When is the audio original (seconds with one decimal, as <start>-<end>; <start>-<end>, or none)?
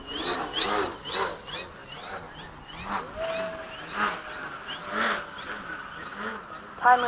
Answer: 0.0-7.1